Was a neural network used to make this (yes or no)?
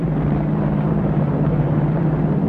yes